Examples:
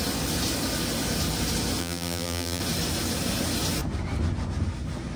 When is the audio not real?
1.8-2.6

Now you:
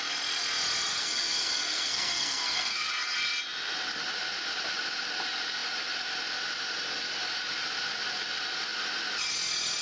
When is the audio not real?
0.9-2.9